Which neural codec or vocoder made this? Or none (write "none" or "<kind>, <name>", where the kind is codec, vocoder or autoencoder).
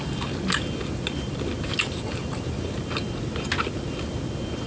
none